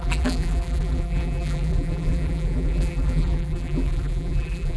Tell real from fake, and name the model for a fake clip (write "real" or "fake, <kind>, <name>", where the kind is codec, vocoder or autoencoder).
fake, vocoder, BigVGAN v2